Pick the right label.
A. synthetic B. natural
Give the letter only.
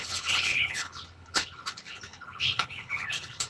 A